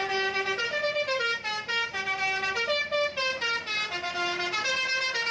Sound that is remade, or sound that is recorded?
recorded